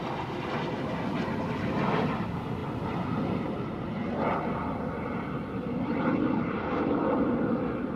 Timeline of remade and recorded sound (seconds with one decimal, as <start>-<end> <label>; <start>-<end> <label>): 0.0-8.0 recorded